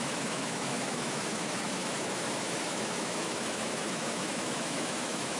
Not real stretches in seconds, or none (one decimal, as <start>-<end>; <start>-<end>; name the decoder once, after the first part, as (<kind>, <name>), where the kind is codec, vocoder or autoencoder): 0.0-5.4 (autoencoder, DAC-VAE)